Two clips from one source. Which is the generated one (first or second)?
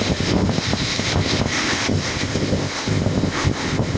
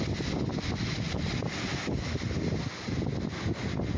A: first